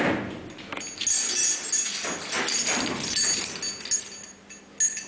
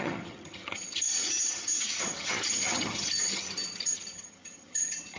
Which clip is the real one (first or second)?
first